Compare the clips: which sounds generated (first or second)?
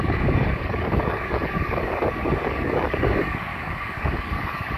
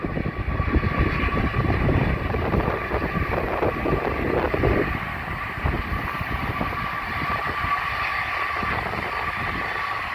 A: first